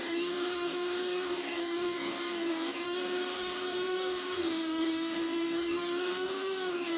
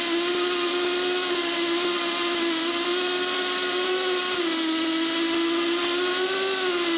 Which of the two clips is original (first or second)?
second